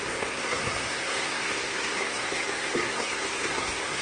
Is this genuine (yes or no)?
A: no